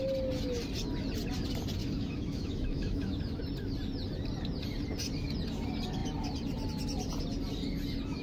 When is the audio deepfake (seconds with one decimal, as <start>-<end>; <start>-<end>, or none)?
1.8-3.4